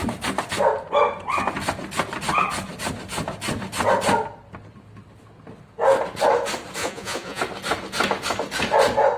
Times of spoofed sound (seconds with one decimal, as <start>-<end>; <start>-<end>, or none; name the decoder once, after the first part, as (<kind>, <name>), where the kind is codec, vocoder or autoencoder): 6.8-7.4 (vocoder, Vocos)